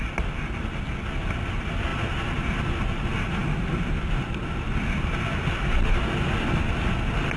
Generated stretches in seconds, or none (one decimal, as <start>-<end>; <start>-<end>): none